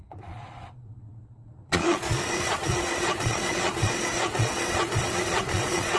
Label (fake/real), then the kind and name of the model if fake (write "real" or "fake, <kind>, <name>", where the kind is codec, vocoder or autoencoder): fake, vocoder, Vocos